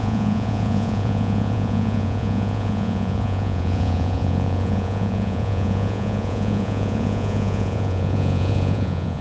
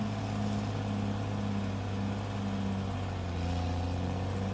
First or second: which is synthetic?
first